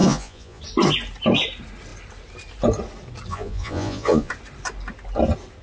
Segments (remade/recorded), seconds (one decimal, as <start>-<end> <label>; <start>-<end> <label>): 0.0-0.6 remade; 0.6-3.3 recorded; 3.3-4.3 remade; 4.3-5.6 recorded